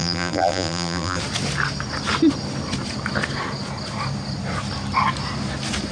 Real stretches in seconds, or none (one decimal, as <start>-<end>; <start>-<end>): 1.2-5.9